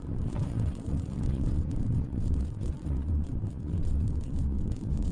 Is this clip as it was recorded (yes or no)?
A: no